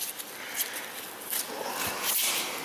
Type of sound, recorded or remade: recorded